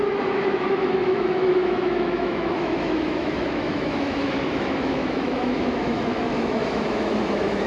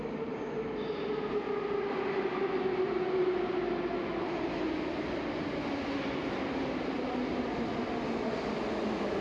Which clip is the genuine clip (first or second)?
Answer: second